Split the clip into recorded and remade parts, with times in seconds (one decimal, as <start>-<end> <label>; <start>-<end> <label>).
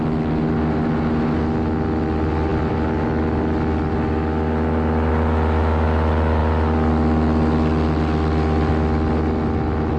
0.0-10.0 recorded